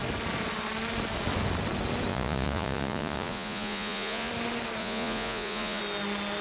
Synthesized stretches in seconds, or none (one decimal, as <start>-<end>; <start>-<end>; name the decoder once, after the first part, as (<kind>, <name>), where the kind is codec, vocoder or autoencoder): 2.1-4.3 (vocoder, Vocos); 4.8-5.8